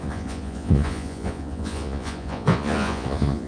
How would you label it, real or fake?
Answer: fake